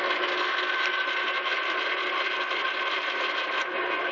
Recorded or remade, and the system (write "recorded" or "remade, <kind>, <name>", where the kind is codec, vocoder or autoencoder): recorded